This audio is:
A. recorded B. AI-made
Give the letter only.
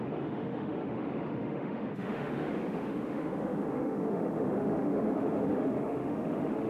B